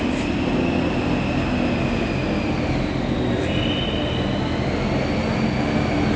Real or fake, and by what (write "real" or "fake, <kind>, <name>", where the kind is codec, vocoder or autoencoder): real